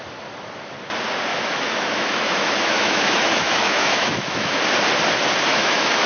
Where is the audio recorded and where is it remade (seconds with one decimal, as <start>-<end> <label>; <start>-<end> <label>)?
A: 0.0-1.3 recorded; 1.3-4.6 remade; 4.6-5.5 recorded; 5.5-6.1 remade